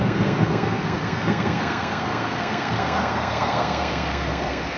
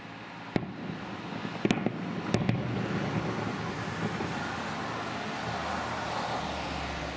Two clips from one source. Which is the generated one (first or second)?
first